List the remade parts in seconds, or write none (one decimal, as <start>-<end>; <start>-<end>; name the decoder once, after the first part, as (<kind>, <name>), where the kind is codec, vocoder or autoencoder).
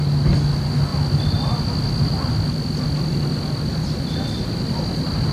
none